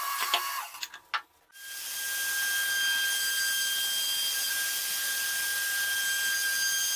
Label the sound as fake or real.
real